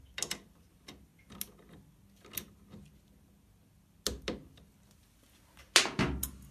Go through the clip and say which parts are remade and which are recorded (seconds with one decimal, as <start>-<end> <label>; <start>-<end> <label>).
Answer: 0.0-6.5 recorded